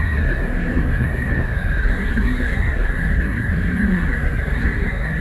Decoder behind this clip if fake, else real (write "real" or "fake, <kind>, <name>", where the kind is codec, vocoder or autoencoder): fake, codec, SNAC